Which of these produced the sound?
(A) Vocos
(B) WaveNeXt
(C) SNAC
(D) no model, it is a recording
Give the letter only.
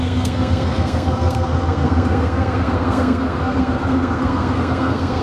C